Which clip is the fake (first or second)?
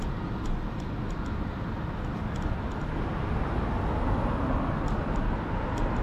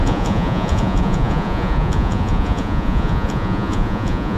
second